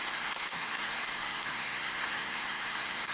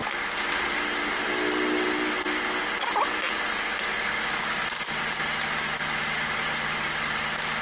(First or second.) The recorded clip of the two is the second